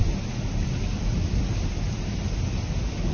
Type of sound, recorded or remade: recorded